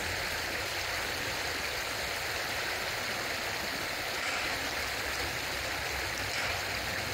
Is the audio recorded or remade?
recorded